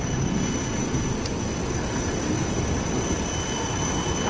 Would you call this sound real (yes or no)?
yes